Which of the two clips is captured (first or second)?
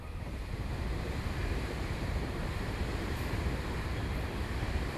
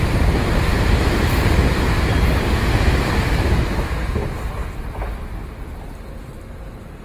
second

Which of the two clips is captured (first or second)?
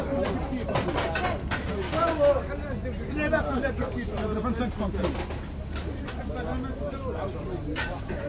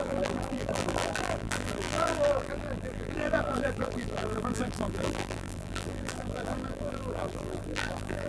first